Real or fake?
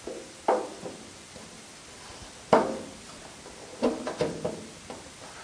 real